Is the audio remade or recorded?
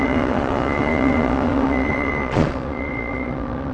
remade